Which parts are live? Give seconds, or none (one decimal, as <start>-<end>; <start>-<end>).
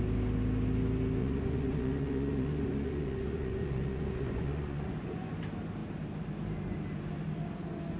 0.0-1.2; 5.3-8.0